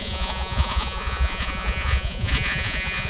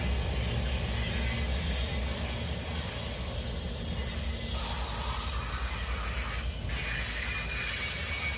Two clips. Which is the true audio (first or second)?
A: second